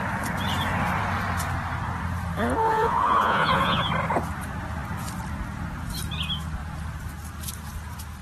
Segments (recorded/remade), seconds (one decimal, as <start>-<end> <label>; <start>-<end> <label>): 0.0-2.7 recorded; 2.7-3.9 remade; 3.9-8.2 recorded